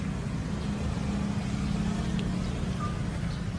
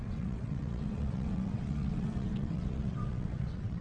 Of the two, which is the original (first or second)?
first